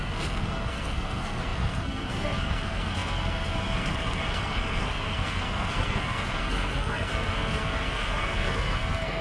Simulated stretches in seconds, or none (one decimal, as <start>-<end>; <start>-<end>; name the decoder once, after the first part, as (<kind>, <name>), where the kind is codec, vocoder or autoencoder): 0.0-9.2 (codec, SNAC)